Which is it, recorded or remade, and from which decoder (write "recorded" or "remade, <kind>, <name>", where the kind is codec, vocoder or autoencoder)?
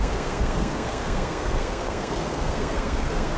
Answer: remade, codec, SNAC